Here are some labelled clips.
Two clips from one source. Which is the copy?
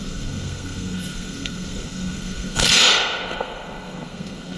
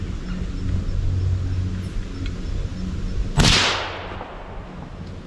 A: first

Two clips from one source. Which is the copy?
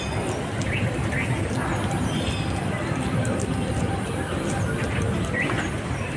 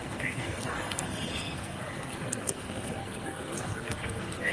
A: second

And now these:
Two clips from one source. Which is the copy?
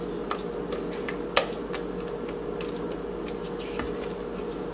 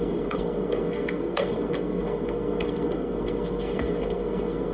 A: second